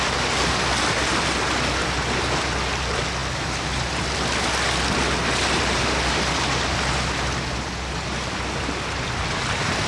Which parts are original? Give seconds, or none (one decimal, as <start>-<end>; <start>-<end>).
0.0-9.9